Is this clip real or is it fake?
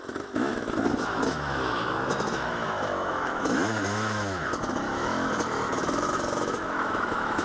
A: fake